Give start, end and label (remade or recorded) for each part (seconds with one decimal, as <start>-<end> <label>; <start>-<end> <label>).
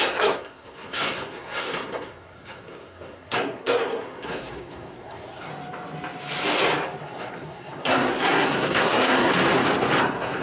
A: 0.0-5.5 remade; 5.5-7.0 recorded; 7.0-9.3 remade; 9.3-10.0 recorded; 10.0-10.4 remade